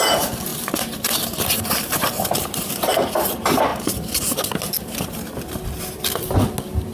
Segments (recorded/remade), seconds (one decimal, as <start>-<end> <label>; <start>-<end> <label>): 0.0-0.5 recorded; 0.5-3.1 remade; 3.1-6.9 recorded